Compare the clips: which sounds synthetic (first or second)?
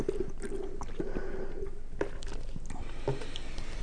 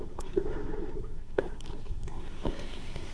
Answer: second